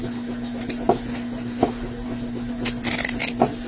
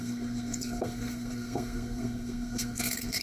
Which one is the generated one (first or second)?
second